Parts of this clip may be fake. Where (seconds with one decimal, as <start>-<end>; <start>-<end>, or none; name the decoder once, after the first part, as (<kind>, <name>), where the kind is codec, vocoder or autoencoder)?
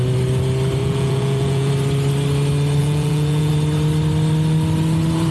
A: 0.8-1.7 (vocoder, Vocos); 2.8-3.5